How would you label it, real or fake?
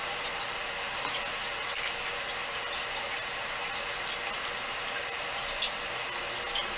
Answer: real